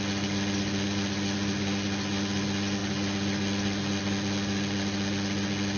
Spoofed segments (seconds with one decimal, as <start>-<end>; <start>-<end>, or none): none